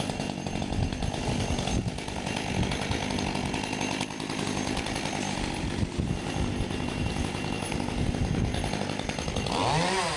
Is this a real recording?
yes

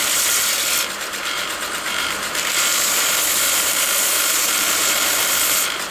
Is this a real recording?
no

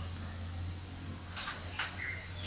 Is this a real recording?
yes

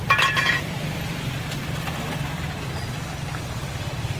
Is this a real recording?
no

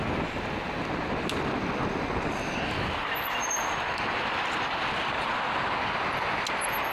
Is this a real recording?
yes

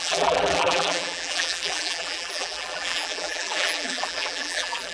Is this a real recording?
no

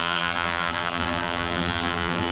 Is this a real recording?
no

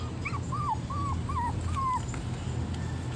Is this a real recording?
yes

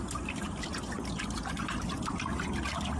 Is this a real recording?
yes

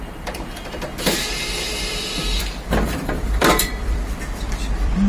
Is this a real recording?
no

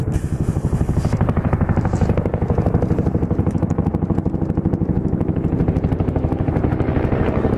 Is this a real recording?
no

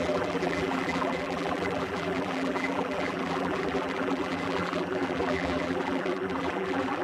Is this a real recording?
no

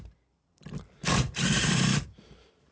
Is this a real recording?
no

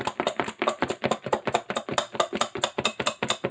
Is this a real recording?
yes